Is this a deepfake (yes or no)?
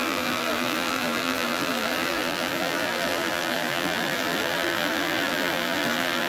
yes